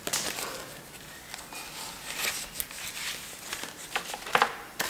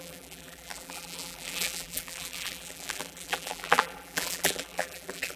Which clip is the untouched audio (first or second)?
first